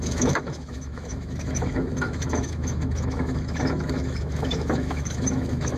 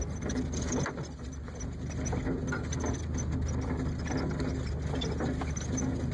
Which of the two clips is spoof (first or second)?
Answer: first